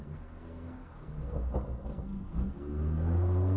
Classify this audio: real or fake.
fake